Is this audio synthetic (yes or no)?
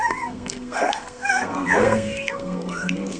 yes